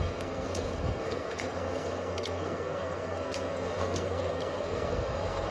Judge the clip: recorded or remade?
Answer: remade